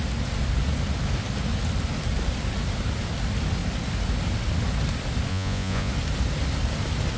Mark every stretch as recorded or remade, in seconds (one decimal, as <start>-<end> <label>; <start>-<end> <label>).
0.0-5.3 recorded; 5.3-5.9 remade; 5.9-7.2 recorded